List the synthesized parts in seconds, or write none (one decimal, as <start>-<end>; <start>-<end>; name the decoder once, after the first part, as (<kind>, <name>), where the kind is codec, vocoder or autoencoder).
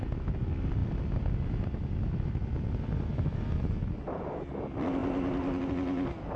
none